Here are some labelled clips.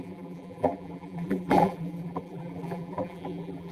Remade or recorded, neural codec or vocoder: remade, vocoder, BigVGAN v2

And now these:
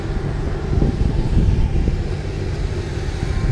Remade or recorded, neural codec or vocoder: recorded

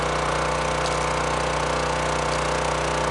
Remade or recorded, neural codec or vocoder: recorded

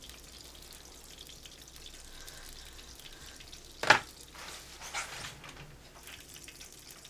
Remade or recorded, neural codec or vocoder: recorded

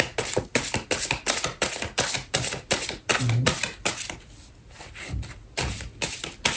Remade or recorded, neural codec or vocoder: recorded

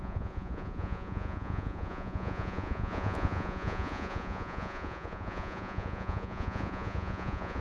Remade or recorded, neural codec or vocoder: remade, vocoder, Vocos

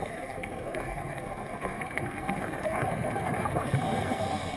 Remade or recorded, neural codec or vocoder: remade, codec, SNAC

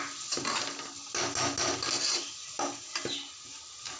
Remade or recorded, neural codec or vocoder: recorded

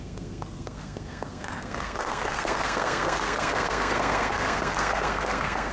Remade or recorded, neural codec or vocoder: remade, codec, SNAC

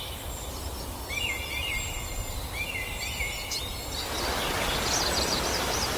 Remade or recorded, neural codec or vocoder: recorded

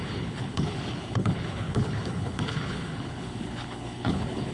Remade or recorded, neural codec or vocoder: remade, codec, HILCodec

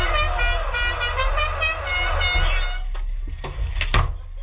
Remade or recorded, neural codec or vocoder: recorded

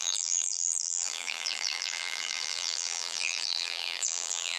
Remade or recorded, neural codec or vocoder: remade, vocoder, BigVGAN v2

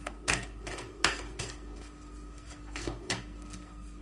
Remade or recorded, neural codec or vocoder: remade, codec, SNAC